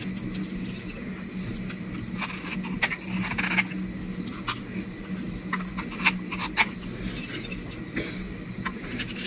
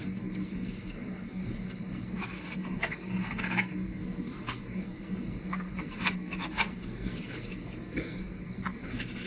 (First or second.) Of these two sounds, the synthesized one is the second